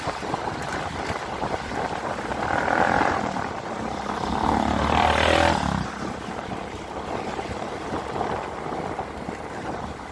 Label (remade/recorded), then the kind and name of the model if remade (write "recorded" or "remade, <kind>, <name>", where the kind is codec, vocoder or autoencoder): recorded